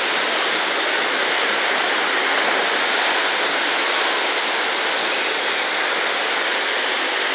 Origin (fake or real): real